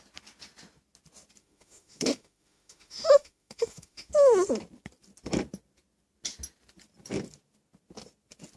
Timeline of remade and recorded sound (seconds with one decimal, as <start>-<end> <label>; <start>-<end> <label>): 0.0-1.4 recorded; 1.4-4.1 remade; 4.1-8.6 recorded